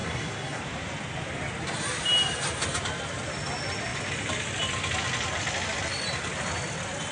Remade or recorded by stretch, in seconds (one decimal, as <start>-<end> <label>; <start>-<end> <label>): 0.0-0.6 remade; 0.6-7.1 recorded